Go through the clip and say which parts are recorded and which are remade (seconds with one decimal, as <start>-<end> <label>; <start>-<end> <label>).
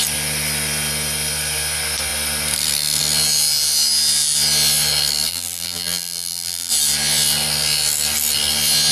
0.0-5.3 recorded; 5.3-6.7 remade; 6.7-8.9 recorded